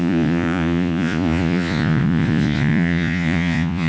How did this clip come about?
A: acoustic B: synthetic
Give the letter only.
B